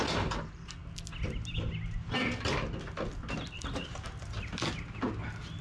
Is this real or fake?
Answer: real